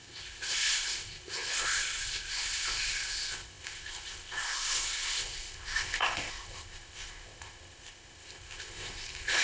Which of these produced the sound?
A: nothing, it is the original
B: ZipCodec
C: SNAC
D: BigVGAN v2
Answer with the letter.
B